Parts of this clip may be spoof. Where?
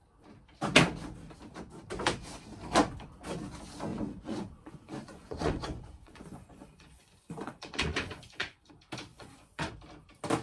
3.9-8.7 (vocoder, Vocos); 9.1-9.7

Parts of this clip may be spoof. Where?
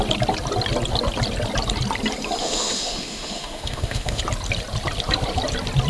2.4-4.2 (autoencoder, DAC-VAE)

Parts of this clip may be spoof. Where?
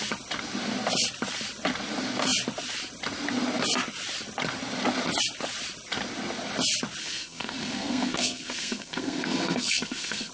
7.0-10.3 (codec, SNAC)